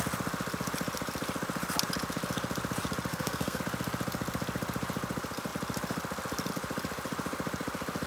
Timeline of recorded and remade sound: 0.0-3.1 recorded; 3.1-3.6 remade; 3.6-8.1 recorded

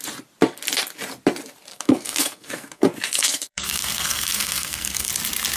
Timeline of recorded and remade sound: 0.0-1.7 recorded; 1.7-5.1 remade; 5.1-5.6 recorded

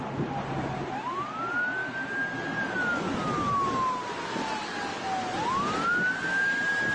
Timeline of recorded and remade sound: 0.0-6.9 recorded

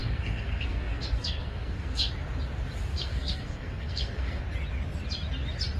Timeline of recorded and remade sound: 0.0-2.1 remade; 2.1-2.9 recorded; 2.9-4.4 remade; 4.4-5.8 recorded